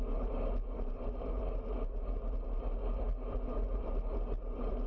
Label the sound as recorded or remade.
recorded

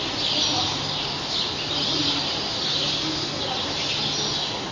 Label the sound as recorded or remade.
recorded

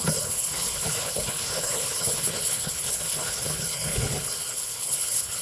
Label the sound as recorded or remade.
remade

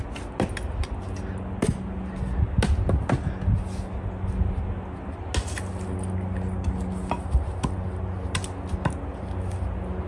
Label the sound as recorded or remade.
recorded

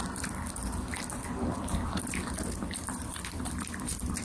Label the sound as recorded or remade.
recorded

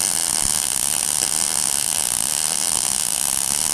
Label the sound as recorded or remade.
recorded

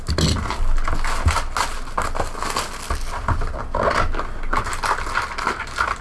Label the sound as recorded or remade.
recorded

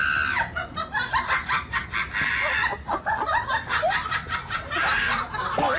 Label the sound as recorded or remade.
recorded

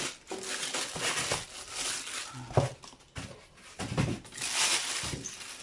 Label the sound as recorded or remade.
recorded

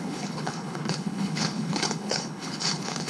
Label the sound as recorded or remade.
remade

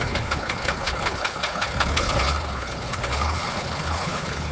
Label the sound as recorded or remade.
remade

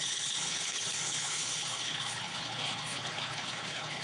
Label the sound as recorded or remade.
remade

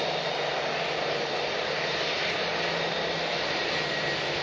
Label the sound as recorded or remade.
recorded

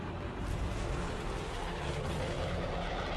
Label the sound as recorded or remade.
recorded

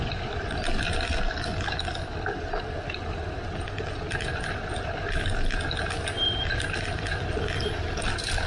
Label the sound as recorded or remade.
recorded